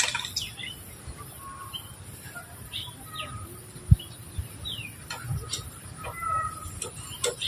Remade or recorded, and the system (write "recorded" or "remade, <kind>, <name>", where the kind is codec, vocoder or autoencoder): recorded